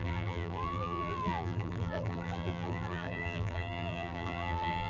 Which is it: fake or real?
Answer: fake